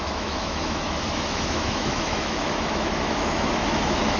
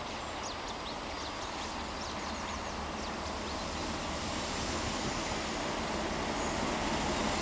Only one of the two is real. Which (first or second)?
second